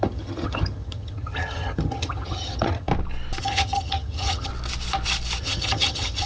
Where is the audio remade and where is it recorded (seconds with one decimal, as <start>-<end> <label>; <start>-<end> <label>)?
0.0-2.9 remade; 2.9-3.4 recorded; 3.4-4.5 remade; 4.5-5.4 recorded; 5.4-6.3 remade